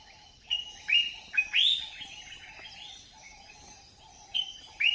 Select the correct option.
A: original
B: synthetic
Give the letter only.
B